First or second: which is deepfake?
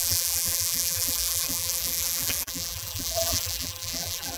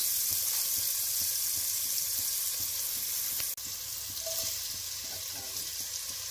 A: first